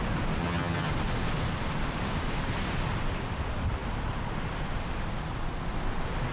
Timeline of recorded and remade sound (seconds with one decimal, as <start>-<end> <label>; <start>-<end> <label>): 0.0-0.4 recorded; 0.4-0.9 remade; 0.9-6.3 recorded